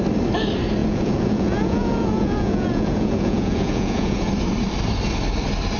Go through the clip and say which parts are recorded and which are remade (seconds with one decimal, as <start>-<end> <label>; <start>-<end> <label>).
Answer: 0.0-0.8 recorded; 0.8-4.3 remade; 4.3-5.8 recorded